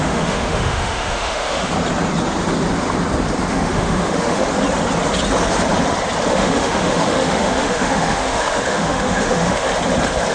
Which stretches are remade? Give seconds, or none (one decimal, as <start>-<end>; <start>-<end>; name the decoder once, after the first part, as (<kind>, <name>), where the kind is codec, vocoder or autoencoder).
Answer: 0.0-1.7 (autoencoder, DAC-VAE); 3.5-4.5; 6.3-9.7